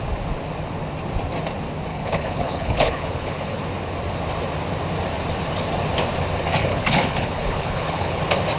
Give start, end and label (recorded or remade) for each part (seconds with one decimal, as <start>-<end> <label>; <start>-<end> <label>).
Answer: 0.0-1.9 recorded; 1.9-3.6 remade; 3.6-6.7 recorded; 6.7-8.2 remade; 8.2-8.6 recorded